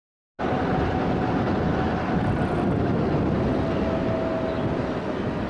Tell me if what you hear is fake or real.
real